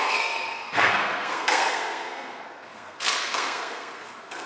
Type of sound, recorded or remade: remade